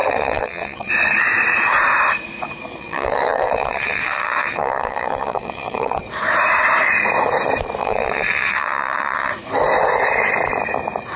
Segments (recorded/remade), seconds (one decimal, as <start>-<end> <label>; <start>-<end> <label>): 0.0-0.9 remade; 0.9-2.8 recorded; 2.8-6.0 remade; 6.0-7.8 recorded; 7.8-9.3 remade; 9.3-11.2 recorded